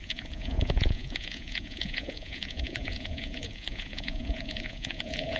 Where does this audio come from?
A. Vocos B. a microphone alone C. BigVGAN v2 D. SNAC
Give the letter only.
A